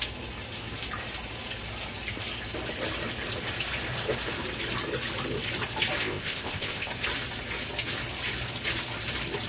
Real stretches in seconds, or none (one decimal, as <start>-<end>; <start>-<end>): 0.0-6.0; 6.9-9.5